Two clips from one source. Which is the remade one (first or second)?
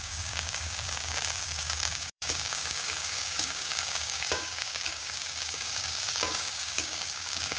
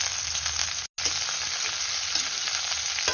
first